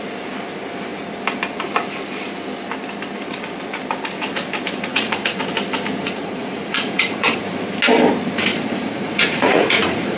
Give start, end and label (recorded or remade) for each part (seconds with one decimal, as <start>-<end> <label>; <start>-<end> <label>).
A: 0.0-4.9 recorded; 4.9-5.4 remade; 5.4-6.0 recorded; 6.0-7.4 remade; 7.4-8.5 recorded; 8.5-10.2 remade